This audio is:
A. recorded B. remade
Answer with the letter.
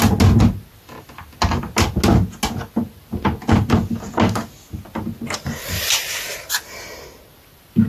A